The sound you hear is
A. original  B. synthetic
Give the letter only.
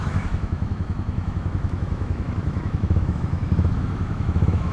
B